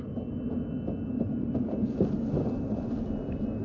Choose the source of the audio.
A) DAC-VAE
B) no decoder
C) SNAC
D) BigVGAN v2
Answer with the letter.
B